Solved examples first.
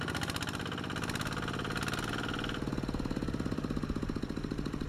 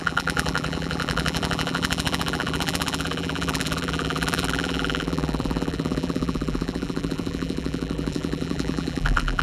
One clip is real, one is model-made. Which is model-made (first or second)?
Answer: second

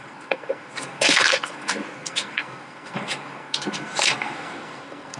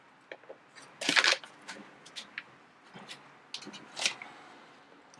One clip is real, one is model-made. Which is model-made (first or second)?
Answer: first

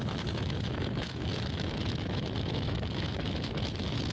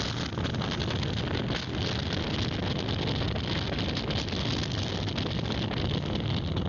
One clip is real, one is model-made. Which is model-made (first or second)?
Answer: first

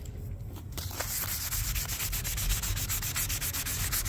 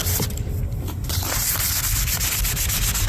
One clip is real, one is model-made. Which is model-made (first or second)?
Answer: second